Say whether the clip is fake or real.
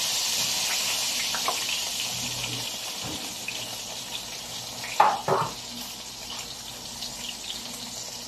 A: real